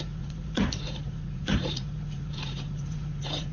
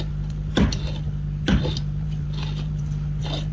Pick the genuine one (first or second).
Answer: second